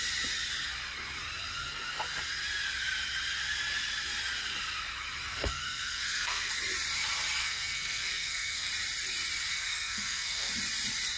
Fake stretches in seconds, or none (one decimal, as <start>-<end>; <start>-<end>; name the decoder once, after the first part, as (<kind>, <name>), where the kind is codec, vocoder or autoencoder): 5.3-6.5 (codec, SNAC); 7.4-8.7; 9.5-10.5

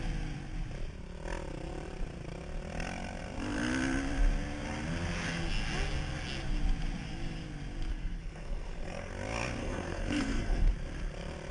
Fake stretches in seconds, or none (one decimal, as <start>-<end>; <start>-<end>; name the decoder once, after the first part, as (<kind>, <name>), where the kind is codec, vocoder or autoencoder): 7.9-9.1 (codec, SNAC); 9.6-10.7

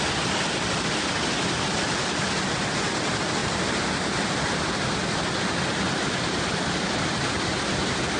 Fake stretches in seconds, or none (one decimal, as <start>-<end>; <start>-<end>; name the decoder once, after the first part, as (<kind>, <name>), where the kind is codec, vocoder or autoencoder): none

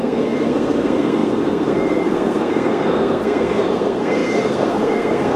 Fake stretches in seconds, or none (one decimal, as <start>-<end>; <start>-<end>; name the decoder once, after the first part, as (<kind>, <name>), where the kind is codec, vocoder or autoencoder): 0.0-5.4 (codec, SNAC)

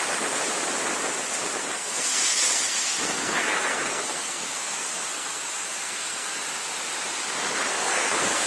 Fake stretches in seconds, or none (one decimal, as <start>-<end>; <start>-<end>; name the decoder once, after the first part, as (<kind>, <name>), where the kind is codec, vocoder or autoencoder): 1.6-6.3 (codec, SNAC); 7.7-8.5

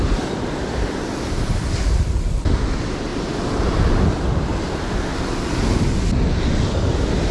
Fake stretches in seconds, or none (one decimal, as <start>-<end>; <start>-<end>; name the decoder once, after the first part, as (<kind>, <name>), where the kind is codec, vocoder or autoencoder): none

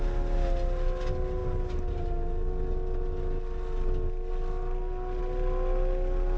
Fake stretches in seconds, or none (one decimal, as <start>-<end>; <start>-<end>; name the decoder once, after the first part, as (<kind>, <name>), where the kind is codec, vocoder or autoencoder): none

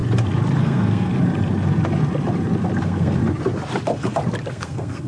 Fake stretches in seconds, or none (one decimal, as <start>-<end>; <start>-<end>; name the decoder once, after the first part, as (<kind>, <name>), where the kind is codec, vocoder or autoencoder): 0.6-1.1 (codec, SNAC); 2.8-3.2; 4.5-5.1